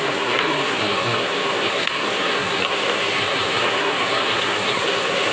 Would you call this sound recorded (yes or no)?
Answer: no